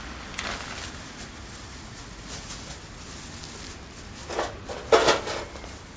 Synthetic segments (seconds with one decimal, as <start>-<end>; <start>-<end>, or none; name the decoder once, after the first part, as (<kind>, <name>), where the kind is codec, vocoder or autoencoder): 1.6-2.7 (vocoder, Vocos)